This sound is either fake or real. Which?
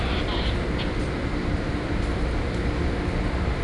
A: fake